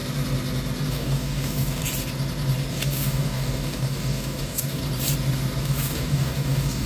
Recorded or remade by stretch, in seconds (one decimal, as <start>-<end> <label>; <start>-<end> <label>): 0.0-0.9 recorded; 0.9-1.8 remade; 1.8-2.7 recorded; 2.7-4.8 remade; 4.8-5.6 recorded; 5.6-6.9 remade